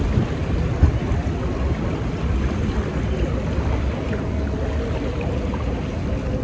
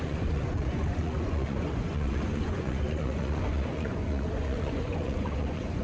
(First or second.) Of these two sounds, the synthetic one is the second